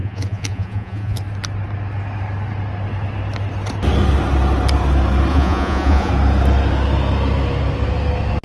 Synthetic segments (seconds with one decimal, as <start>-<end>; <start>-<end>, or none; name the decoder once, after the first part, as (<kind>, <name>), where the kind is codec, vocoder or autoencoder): 0.0-1.2 (vocoder, Vocos); 5.3-6.1